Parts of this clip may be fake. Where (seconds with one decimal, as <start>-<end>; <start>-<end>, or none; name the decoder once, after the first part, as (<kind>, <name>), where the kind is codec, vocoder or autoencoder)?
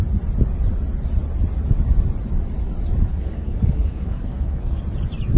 3.1-4.8 (codec, SNAC)